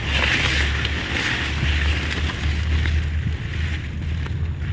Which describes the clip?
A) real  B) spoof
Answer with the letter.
A